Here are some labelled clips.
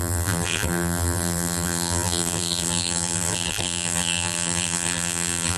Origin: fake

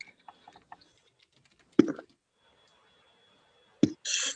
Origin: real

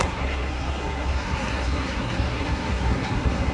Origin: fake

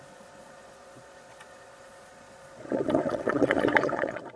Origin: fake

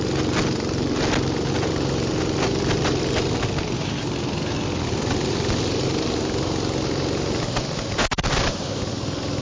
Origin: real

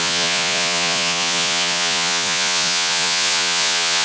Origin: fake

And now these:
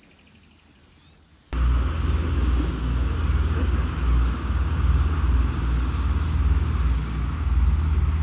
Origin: real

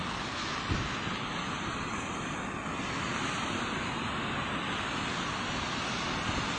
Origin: real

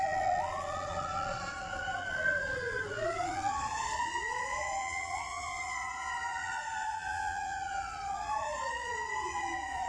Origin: fake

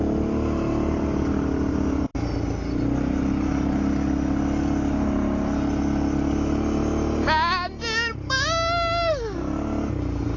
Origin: real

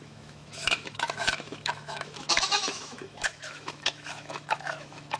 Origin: fake